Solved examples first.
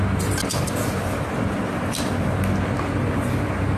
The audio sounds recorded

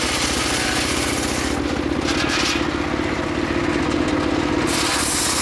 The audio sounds recorded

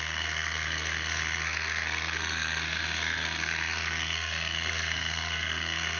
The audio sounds remade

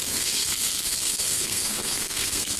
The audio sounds remade